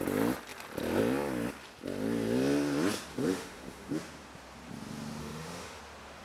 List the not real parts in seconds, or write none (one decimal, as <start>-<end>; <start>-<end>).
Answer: 3.1-3.9; 5.2-5.8